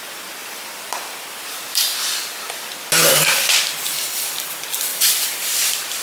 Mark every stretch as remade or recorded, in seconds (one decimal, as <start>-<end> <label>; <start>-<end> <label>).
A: 0.0-0.4 recorded; 0.4-2.7 remade; 2.7-4.9 recorded; 4.9-6.0 remade